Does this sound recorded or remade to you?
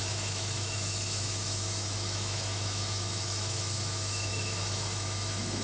remade